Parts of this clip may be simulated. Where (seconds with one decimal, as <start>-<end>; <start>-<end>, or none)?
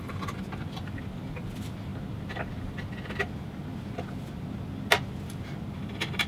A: 0.0-1.9; 5.7-6.3